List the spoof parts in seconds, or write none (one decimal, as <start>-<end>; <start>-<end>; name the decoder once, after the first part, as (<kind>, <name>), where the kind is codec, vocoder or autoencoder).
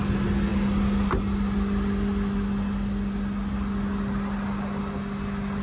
none